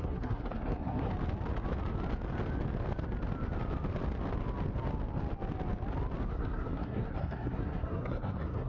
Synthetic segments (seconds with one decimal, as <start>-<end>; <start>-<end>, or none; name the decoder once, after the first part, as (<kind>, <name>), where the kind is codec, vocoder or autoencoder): 0.0-1.1 (codec, SNAC); 6.3-8.7